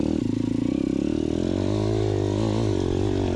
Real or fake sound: real